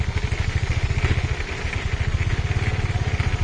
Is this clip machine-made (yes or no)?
no